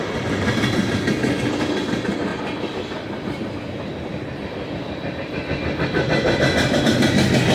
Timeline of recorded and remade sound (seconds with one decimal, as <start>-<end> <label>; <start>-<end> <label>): 0.0-7.5 recorded